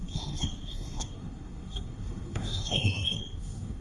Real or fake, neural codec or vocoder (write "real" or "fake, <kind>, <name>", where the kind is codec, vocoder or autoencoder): fake, codec, SNAC